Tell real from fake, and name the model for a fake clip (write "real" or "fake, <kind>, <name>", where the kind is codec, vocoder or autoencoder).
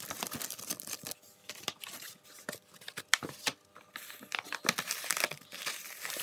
real